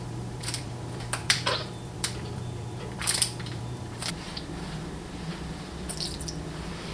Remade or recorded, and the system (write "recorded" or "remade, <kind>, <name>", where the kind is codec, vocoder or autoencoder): remade, vocoder, BigVGAN v2